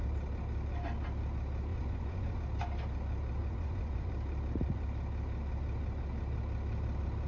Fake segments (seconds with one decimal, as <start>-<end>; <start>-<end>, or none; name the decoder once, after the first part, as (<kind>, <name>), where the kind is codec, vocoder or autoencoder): 1.7-2.4 (vocoder, Vocos); 3.4-4.1